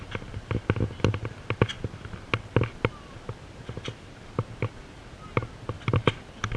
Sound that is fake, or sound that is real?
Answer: real